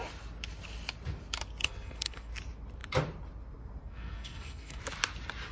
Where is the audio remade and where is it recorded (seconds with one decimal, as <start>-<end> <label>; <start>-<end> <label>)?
0.0-1.6 recorded; 1.6-2.3 remade; 2.3-3.8 recorded; 3.8-4.8 remade; 4.8-5.5 recorded